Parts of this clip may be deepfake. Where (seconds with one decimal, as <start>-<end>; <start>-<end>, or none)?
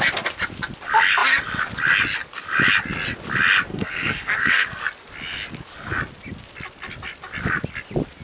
3.7-4.8